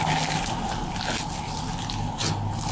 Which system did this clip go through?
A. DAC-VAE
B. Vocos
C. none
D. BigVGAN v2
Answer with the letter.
C